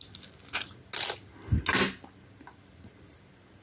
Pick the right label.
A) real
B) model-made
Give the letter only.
A